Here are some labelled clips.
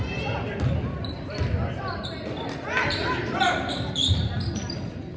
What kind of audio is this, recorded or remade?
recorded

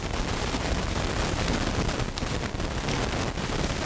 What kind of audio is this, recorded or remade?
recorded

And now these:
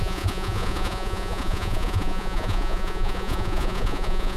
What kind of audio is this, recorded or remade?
remade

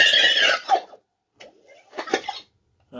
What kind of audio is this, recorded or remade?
recorded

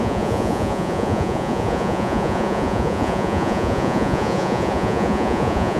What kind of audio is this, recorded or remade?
remade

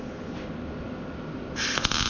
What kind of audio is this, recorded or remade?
recorded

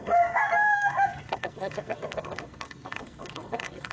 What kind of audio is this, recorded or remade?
remade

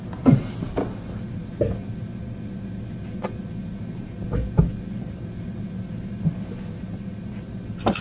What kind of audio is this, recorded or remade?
recorded